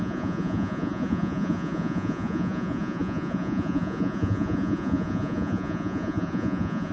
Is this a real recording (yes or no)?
no